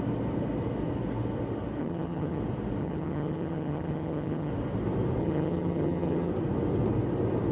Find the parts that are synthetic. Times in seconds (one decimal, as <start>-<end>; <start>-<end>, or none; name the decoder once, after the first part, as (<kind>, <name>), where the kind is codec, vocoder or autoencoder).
1.8-2.4 (vocoder, HiFi-GAN); 2.8-4.5; 5.2-6.3